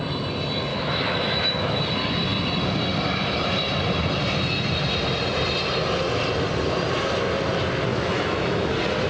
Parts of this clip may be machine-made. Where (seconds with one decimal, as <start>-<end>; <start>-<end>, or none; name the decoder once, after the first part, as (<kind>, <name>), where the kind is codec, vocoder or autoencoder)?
0.7-1.8 (autoencoder, DAC-VAE); 7.9-8.7